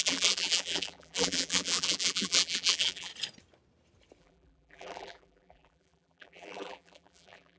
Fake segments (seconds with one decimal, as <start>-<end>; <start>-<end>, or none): 0.0-3.1; 4.2-7.6